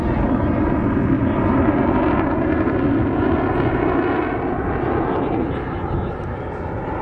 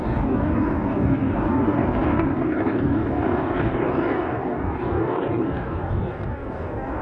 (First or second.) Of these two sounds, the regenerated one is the second